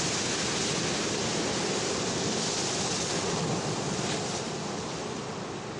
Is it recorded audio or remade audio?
recorded